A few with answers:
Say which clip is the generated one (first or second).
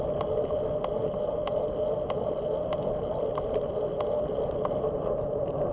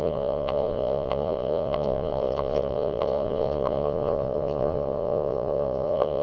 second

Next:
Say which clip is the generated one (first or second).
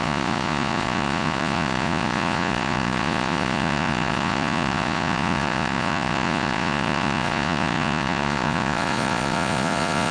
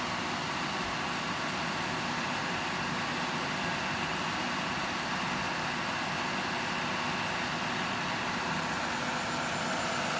first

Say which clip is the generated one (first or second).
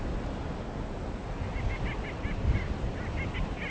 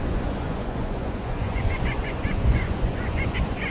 second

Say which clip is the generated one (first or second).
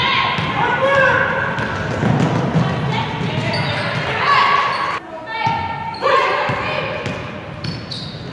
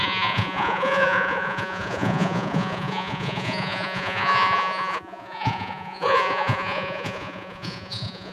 second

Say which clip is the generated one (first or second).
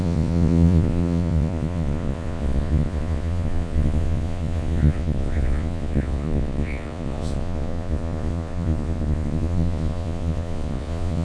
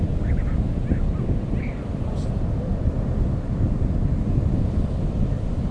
first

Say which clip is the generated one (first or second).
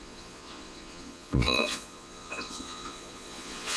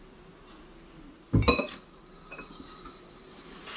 first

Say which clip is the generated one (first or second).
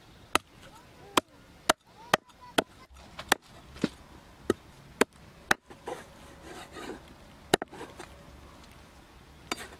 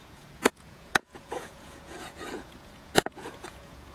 second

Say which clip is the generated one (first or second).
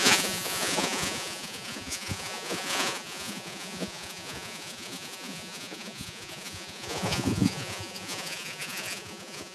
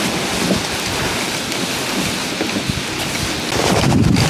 first